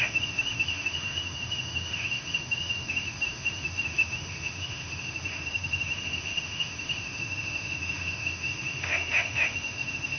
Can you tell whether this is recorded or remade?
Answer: remade